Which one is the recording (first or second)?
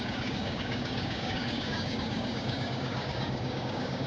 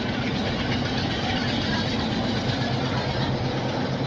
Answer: second